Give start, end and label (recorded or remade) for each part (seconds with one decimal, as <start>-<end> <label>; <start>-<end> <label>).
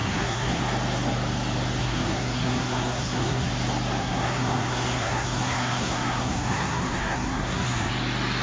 0.0-0.6 remade; 0.6-1.8 recorded; 1.8-3.5 remade; 3.5-4.0 recorded; 4.0-7.9 remade; 7.9-8.4 recorded